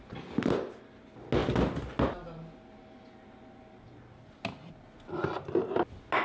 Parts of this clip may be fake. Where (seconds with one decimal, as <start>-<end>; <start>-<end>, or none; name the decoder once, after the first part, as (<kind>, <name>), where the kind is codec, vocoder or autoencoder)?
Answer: none

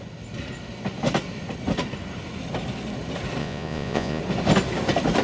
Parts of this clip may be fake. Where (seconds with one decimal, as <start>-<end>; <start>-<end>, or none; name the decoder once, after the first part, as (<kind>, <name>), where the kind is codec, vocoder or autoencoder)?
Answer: 3.4-4.2 (vocoder, Vocos)